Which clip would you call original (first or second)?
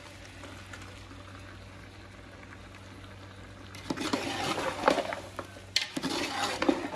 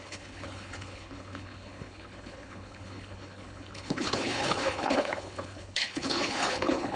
first